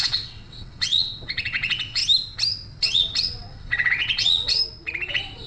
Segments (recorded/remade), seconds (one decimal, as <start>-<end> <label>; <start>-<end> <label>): 0.0-2.0 remade; 2.0-2.8 recorded; 2.8-4.6 remade; 4.6-5.1 recorded; 5.1-5.5 remade